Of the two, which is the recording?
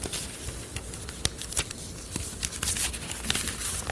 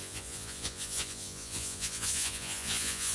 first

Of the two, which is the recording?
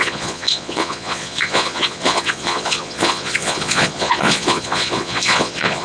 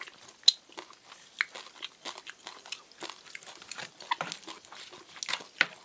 second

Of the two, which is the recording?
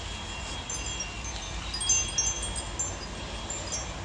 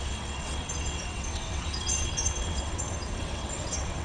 first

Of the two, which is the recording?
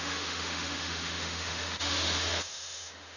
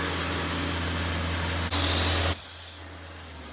second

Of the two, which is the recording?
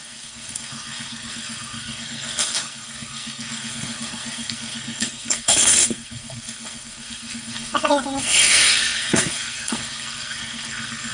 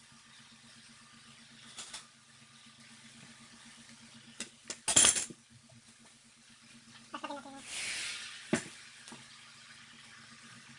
second